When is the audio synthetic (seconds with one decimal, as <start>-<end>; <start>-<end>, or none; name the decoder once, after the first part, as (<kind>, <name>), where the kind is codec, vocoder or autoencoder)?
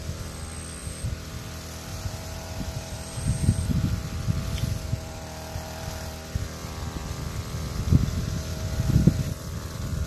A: 0.8-1.3 (vocoder, BigVGAN v2); 1.9-3.9